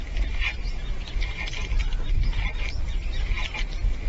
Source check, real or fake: real